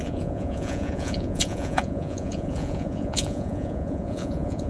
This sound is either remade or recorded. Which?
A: remade